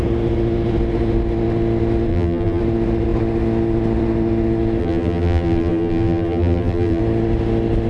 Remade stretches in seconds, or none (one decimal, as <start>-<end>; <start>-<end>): 2.1-2.6; 4.8-7.0

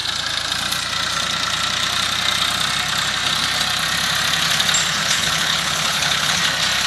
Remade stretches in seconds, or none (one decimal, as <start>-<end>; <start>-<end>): 5.0-6.4

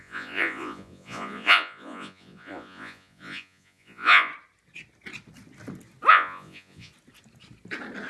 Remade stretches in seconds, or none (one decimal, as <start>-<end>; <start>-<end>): 0.0-4.3; 6.1-6.9

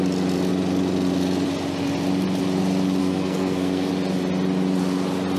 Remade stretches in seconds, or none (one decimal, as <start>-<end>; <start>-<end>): 3.0-3.9

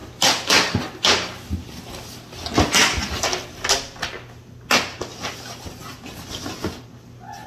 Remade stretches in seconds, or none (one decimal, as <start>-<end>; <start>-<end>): none